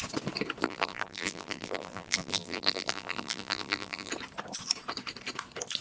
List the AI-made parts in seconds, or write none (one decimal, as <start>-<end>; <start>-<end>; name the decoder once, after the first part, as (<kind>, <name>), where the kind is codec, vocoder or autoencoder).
0.6-4.1 (vocoder, BigVGAN v2)